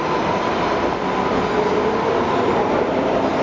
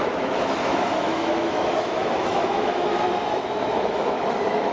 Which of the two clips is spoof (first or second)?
second